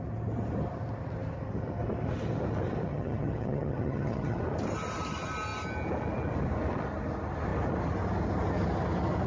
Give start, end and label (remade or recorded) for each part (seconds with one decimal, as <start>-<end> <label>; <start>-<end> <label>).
0.0-2.9 recorded; 2.9-4.4 remade; 4.4-9.3 recorded